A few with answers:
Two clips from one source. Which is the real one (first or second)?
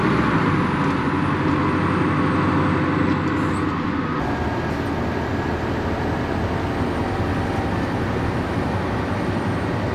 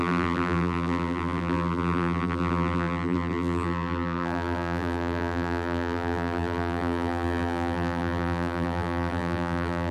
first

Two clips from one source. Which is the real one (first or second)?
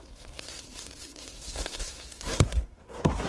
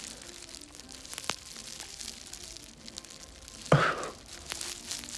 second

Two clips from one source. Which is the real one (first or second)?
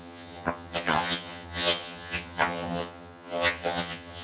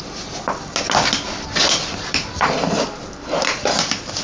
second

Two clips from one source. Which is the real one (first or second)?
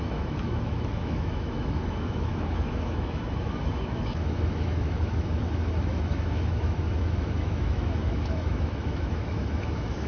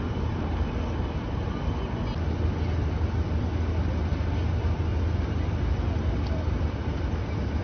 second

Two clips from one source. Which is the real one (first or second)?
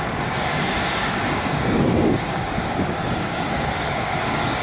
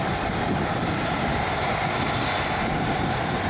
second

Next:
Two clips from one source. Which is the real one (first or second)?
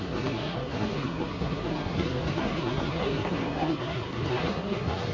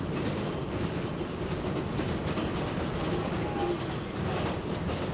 second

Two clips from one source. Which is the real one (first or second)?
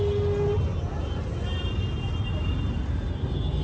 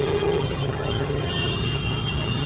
first